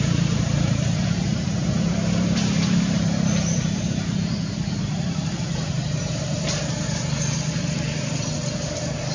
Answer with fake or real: fake